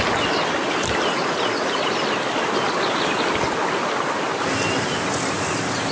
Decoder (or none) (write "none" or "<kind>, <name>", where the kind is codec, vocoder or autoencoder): none